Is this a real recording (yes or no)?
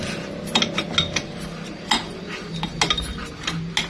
yes